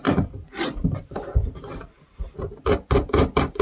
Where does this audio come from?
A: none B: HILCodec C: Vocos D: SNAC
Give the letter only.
A